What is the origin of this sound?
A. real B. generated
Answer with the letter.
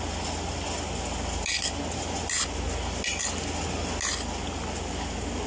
A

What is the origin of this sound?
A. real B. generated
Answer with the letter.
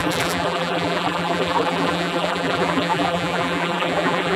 B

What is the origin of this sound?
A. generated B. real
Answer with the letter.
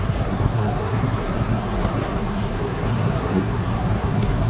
A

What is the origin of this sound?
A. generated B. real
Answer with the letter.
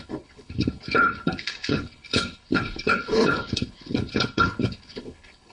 A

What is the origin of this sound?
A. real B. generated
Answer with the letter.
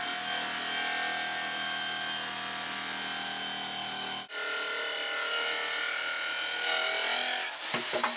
A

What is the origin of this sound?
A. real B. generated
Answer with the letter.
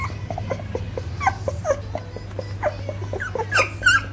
A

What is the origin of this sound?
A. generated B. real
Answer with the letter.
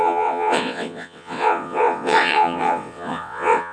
A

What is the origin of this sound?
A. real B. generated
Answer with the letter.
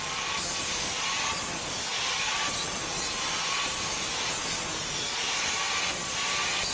A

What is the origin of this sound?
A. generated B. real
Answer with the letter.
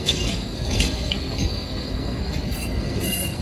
A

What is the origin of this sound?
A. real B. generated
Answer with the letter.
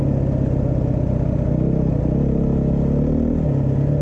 A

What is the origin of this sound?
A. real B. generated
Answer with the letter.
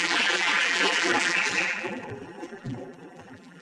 B